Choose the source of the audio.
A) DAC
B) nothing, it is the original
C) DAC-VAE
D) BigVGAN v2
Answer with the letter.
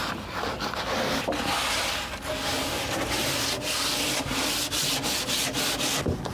B